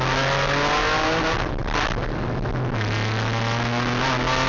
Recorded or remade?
recorded